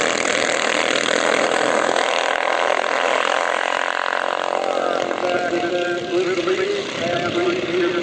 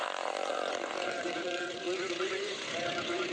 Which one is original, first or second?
first